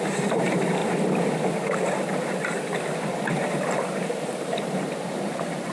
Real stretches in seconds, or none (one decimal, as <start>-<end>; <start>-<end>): 0.8-3.9